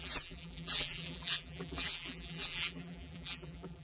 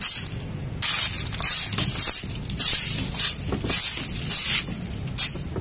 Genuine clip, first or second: second